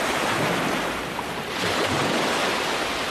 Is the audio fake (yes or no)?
no